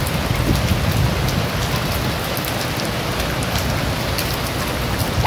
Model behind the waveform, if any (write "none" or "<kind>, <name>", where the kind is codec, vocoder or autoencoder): none